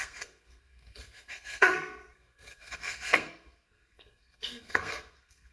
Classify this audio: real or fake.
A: fake